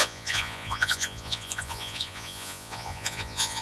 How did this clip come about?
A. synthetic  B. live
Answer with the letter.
A